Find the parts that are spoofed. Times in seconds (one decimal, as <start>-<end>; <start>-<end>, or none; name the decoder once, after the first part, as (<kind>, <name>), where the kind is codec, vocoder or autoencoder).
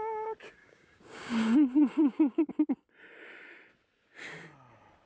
0.6-2.5 (codec, DAC)